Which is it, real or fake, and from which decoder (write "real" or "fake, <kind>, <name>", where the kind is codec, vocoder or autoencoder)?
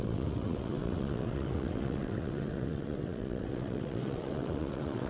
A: fake, vocoder, WaveNeXt